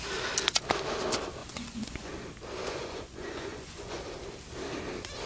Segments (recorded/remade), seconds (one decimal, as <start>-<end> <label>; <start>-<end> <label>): 0.0-1.4 recorded; 1.4-2.1 remade; 2.1-2.6 recorded; 2.6-4.0 remade; 4.0-5.3 recorded